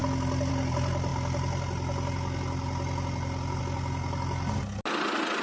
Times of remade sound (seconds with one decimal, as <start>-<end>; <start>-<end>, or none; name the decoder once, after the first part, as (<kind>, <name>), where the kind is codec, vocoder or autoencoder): none